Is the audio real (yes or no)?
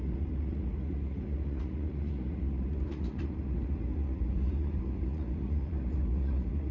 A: no